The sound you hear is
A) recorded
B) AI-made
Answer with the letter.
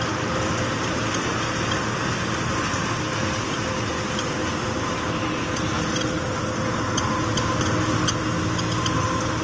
A